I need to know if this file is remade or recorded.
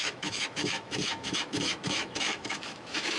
remade